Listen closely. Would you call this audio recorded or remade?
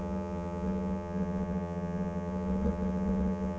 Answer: remade